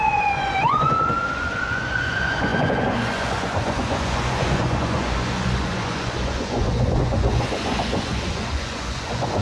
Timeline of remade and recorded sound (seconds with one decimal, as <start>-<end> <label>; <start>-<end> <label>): 0.0-9.4 remade